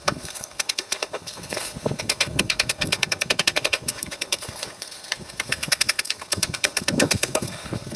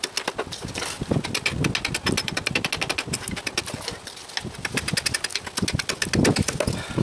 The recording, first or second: second